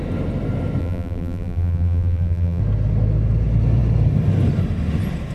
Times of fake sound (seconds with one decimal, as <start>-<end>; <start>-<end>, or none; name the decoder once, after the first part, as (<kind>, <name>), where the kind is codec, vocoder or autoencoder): 0.8-2.6 (vocoder, BigVGAN v2)